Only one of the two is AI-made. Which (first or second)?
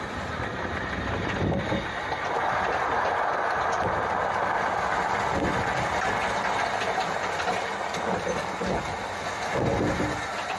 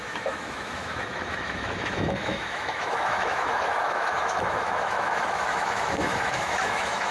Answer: second